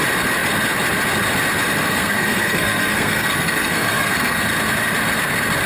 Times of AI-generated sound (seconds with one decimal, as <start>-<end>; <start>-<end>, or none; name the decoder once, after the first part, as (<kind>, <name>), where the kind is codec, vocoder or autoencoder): 1.8-4.4 (codec, SNAC)